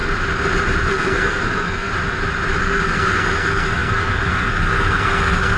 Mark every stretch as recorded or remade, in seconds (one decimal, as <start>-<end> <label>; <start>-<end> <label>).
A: 0.0-0.9 recorded; 0.9-1.9 remade; 1.9-2.6 recorded; 2.6-5.6 remade